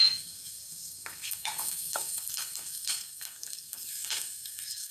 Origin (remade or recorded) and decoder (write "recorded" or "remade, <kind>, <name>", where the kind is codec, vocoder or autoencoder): remade, codec, SNAC